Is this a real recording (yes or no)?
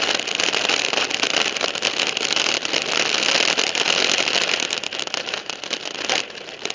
yes